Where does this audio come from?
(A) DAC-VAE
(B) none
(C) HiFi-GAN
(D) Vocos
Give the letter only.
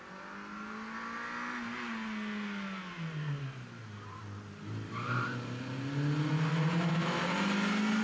B